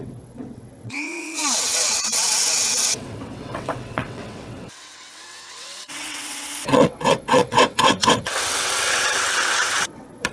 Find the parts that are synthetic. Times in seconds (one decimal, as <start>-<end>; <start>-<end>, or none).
0.0-10.3